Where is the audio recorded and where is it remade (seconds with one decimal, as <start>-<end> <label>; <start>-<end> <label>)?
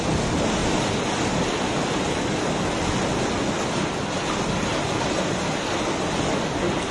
0.0-6.9 recorded